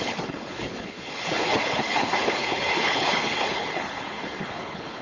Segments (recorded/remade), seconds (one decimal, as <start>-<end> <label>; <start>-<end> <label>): 0.0-5.0 remade